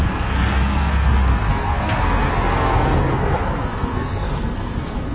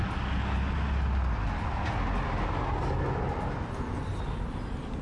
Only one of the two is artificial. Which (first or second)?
first